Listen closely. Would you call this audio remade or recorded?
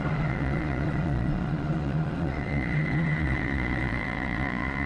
remade